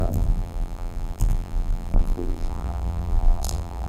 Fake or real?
fake